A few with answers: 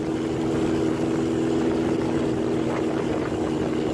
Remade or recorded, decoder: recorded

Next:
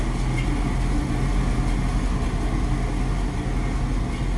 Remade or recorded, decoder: recorded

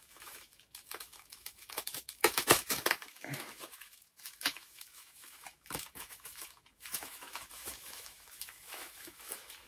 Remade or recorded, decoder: remade, autoencoder, DAC-VAE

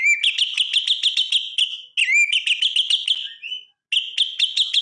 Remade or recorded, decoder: recorded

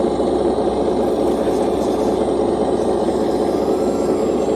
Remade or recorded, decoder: recorded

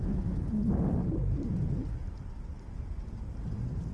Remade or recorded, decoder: recorded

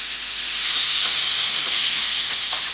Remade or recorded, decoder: remade, autoencoder, DAC-VAE